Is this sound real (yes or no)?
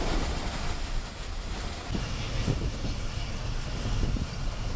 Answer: yes